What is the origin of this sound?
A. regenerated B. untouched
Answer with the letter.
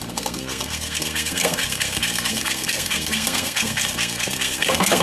A